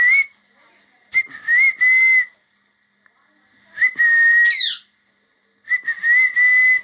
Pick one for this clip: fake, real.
real